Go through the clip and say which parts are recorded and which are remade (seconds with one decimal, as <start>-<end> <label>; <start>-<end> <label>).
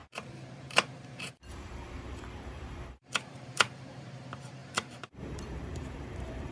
0.0-6.5 remade